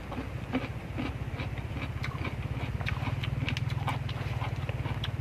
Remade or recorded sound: recorded